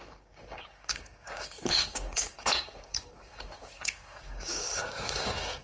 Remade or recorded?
remade